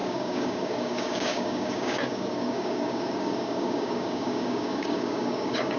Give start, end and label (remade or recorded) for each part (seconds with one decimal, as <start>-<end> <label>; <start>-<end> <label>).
0.0-5.8 remade